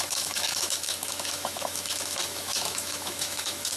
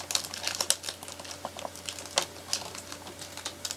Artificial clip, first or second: first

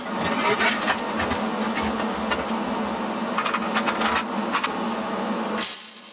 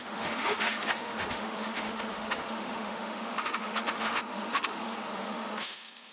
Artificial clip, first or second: second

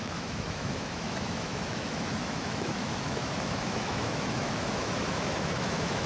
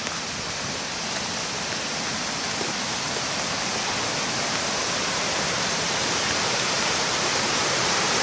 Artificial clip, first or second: first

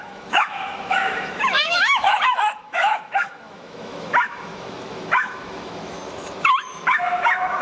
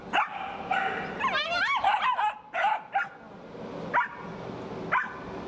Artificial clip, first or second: first